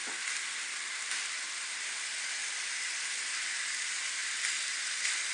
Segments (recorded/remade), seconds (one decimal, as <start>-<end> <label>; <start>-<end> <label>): 0.0-5.3 recorded

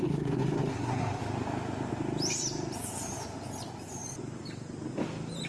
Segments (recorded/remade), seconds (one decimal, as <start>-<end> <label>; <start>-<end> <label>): 0.0-1.2 remade; 1.2-5.5 recorded

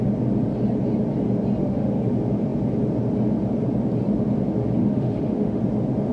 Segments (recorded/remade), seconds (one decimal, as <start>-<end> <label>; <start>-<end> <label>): 0.0-1.6 recorded; 1.6-2.1 remade; 2.1-4.8 recorded; 4.8-5.6 remade; 5.6-6.1 recorded

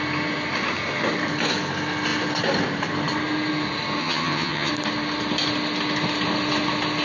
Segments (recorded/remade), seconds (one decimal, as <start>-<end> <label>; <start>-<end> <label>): 0.0-4.0 recorded; 4.0-4.7 remade; 4.7-7.0 recorded

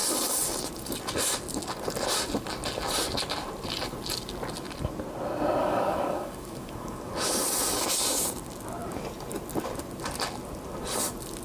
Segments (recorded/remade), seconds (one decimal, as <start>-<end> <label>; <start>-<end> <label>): 0.0-5.6 recorded; 5.6-7.1 remade; 7.1-11.4 recorded

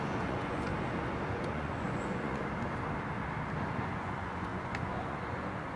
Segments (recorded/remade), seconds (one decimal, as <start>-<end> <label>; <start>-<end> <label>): 0.0-0.7 remade; 0.7-1.3 recorded; 1.3-2.4 remade; 2.4-3.7 recorded; 3.7-5.8 remade

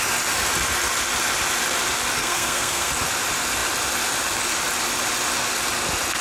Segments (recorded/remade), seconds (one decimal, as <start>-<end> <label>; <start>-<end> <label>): 0.0-2.2 recorded; 2.2-2.9 remade; 2.9-6.2 recorded